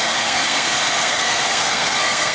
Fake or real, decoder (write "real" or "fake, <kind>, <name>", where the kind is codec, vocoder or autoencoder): fake, codec, SNAC